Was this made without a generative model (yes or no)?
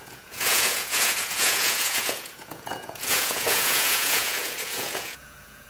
no